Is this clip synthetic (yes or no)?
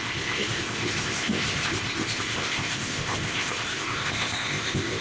yes